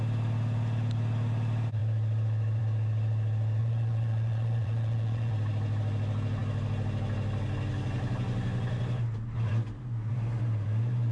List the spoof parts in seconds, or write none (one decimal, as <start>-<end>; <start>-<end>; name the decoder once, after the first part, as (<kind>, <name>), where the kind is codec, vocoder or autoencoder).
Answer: 3.6-5.3 (vocoder, Vocos)